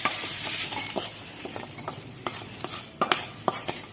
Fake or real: fake